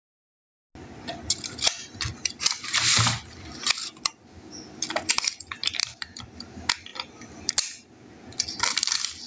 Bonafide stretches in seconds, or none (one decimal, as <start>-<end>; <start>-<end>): 0.0-9.3